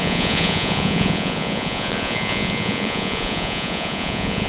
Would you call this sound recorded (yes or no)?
no